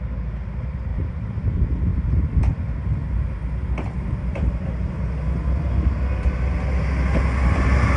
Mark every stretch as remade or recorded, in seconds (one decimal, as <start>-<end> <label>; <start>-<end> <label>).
0.0-0.9 recorded; 0.9-1.5 remade; 1.5-8.0 recorded